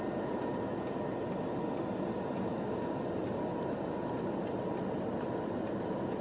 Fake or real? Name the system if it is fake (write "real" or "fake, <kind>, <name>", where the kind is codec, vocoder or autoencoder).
real